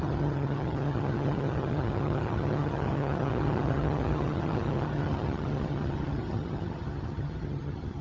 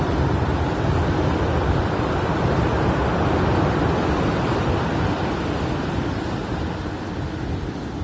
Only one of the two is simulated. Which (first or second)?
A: first